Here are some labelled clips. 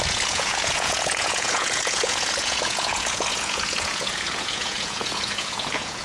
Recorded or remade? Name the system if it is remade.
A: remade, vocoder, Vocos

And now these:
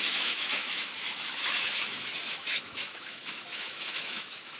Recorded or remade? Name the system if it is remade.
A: remade, autoencoder, DAC-VAE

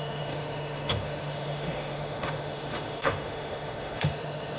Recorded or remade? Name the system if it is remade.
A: remade, autoencoder, DAC-VAE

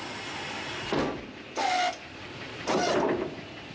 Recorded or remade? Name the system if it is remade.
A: recorded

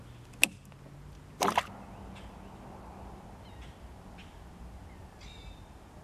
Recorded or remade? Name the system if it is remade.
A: recorded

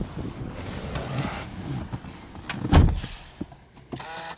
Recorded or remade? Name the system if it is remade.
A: recorded